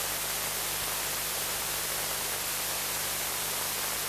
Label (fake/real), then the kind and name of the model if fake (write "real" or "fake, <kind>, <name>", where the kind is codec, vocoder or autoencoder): real